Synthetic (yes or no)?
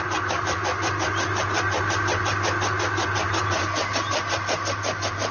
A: no